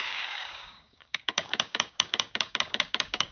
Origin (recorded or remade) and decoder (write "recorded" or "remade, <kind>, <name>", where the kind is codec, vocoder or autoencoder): remade, codec, DAC